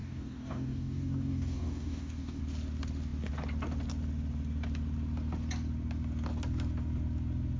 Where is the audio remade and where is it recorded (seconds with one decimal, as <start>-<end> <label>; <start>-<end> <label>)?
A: 0.0-2.4 remade; 2.4-7.6 recorded